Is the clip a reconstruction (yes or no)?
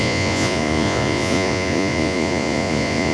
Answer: yes